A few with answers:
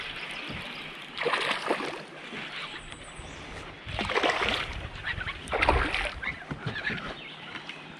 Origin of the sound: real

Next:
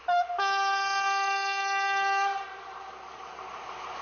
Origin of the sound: real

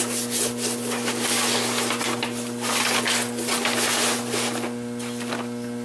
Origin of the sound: real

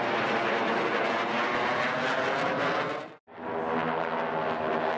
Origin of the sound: real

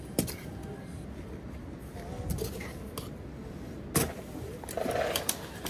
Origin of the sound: real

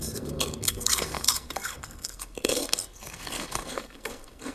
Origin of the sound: fake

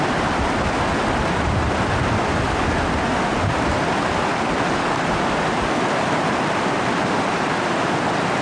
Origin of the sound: real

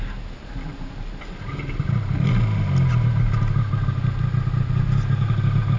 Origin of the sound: real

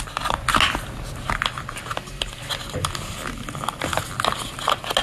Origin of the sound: real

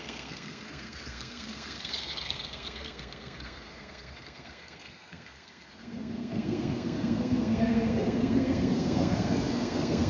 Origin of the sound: fake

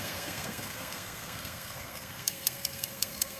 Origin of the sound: fake